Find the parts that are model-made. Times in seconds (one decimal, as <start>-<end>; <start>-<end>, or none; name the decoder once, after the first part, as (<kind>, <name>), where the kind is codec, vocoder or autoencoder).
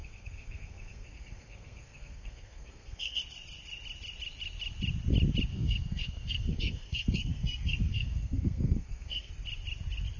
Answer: 0.0-3.2 (codec, SNAC); 5.5-9.3